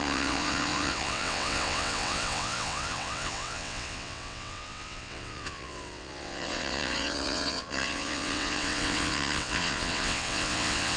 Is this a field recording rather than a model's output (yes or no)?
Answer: no